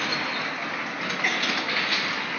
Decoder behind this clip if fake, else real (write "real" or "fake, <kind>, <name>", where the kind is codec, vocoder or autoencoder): real